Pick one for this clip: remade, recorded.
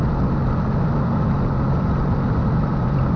recorded